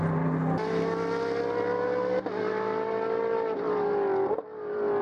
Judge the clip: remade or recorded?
recorded